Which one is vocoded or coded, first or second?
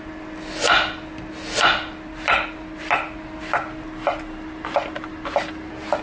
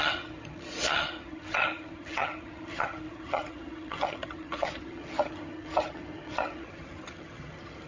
second